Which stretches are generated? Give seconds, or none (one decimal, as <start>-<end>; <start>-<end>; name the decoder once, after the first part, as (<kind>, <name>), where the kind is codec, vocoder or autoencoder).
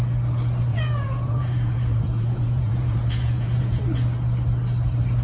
0.7-3.8 (vocoder, Vocos)